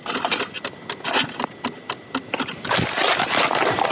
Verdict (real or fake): real